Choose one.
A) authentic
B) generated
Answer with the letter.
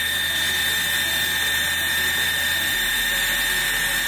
A